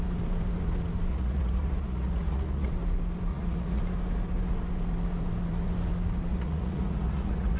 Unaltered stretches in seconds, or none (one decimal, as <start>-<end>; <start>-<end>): 0.0-1.1; 2.7-3.3; 3.8-6.3